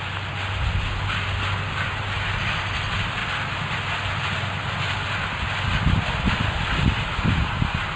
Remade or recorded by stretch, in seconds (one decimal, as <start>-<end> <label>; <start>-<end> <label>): 0.0-8.0 recorded